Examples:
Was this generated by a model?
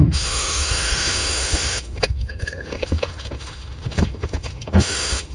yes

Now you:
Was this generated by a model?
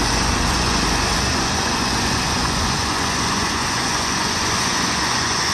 yes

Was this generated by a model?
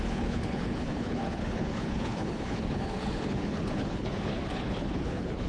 yes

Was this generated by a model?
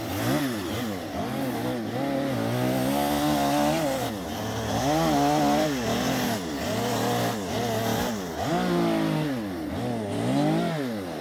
no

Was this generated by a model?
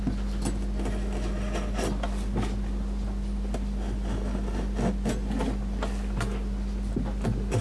no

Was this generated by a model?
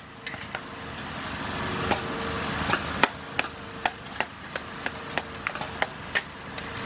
no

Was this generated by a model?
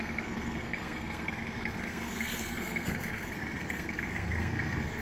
yes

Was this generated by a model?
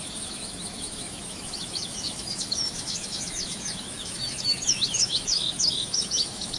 yes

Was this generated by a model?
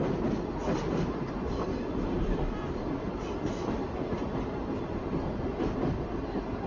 no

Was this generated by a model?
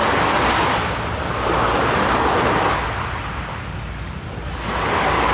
no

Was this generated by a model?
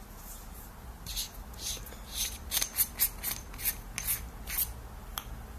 no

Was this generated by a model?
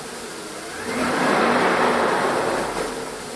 no